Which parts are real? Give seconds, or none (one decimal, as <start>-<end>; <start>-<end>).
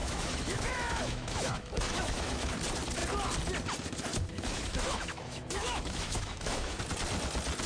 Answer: 2.5-4.1; 6.8-7.7